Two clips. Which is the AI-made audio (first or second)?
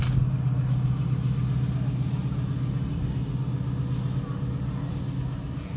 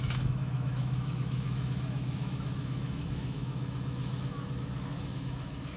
second